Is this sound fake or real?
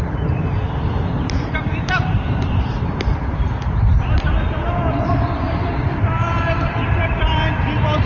fake